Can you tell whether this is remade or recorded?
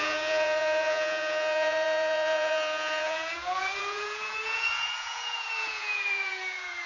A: remade